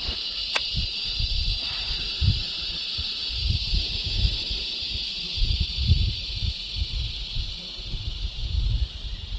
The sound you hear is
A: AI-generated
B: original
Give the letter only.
A